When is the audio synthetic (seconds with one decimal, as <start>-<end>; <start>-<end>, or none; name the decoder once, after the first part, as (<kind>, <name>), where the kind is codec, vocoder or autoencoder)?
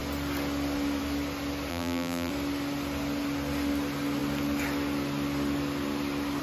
1.7-2.3 (vocoder, BigVGAN v2)